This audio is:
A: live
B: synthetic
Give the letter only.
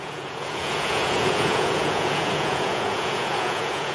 B